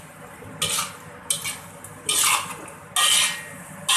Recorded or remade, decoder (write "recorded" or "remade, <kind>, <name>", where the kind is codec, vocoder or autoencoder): recorded